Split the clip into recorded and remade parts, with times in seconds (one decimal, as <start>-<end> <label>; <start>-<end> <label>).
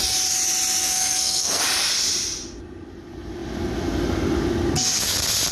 0.0-0.8 recorded; 0.8-1.6 remade; 1.6-5.5 recorded